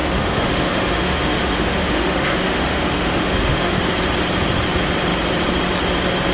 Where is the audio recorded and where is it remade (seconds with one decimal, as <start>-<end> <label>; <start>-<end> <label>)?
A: 0.0-3.8 remade; 3.8-6.3 recorded